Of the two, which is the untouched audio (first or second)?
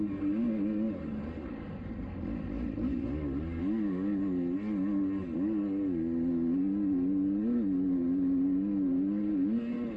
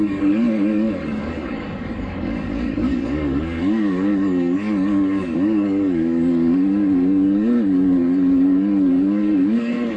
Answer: first